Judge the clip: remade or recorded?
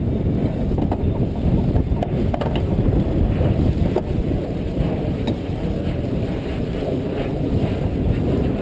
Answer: recorded